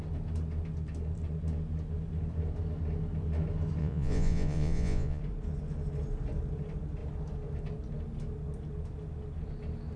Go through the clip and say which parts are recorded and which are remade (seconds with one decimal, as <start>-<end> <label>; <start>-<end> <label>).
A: 0.0-3.8 recorded; 3.8-5.2 remade; 5.2-10.0 recorded